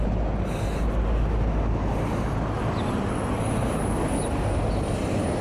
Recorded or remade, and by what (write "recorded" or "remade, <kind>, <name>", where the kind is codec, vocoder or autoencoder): recorded